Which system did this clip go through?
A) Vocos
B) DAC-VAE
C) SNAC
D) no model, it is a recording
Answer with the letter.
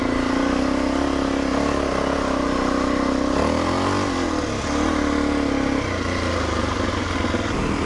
D